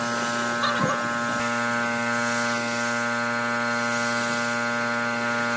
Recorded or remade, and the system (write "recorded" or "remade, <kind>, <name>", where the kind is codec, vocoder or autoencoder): recorded